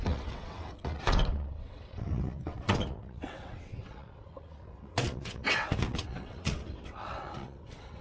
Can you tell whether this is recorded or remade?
remade